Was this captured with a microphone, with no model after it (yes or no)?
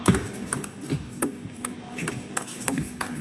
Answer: no